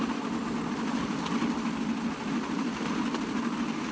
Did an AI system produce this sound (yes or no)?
no